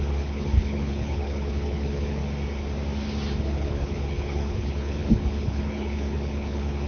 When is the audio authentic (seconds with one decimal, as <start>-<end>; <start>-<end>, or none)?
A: 2.2-3.4